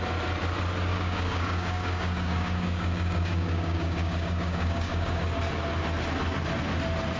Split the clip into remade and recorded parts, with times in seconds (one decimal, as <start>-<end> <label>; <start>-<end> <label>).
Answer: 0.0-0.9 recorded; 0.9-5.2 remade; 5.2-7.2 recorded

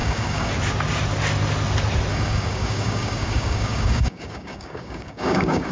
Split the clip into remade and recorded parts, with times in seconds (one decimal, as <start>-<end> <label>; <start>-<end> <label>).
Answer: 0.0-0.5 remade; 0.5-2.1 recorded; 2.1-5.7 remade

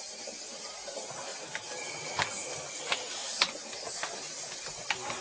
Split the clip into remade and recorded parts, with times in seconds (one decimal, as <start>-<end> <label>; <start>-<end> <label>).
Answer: 0.0-5.2 recorded

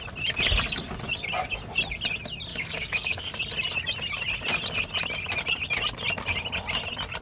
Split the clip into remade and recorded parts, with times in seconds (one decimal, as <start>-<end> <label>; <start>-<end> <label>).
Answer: 0.0-2.5 recorded; 2.5-3.4 remade; 3.4-7.2 recorded

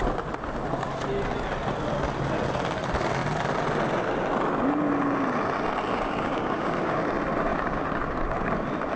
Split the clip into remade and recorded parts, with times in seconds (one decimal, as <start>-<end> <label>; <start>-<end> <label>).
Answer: 0.0-5.9 recorded; 5.9-7.0 remade; 7.0-7.5 recorded; 7.5-8.5 remade; 8.5-9.0 recorded